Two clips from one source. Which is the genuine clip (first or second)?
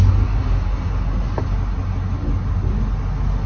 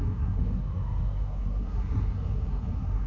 first